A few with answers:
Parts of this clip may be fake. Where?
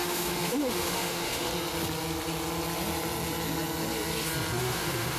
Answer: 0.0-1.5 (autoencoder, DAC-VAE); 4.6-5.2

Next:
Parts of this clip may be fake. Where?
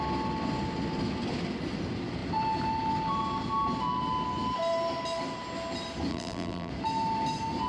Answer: 6.1-6.7 (vocoder, BigVGAN v2)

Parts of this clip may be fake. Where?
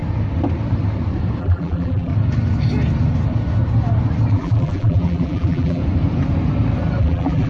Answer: 1.4-2.1 (vocoder, BigVGAN v2); 4.3-5.8; 7.0-7.5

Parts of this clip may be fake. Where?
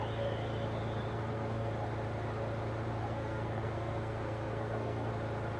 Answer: 1.1-1.7 (codec, SNAC); 3.0-5.1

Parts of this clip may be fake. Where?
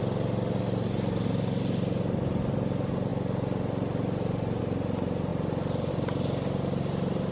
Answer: none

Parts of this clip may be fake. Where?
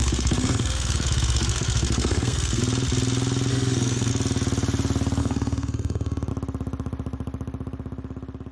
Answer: 0.0-2.6 (codec, SNAC); 3.5-4.1; 5.2-6.3